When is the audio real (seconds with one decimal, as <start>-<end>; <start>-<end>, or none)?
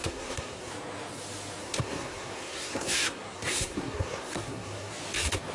0.7-1.6; 4.9-5.5